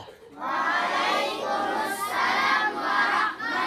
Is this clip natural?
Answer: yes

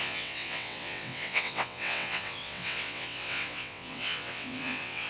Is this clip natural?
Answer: no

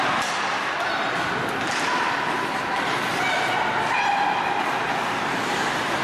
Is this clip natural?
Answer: yes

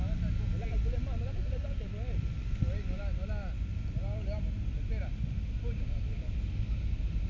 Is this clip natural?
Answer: yes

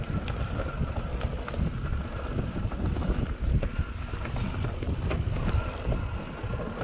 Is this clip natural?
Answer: yes